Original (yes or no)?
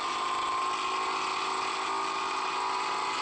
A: yes